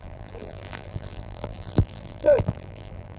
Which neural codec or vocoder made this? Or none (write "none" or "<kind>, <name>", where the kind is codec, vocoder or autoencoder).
vocoder, BigVGAN v2